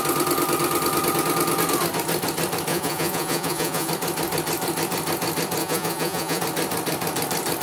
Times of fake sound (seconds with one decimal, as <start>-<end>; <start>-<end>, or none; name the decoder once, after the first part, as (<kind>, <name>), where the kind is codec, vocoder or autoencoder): 2.7-3.9 (vocoder, Vocos); 5.6-6.4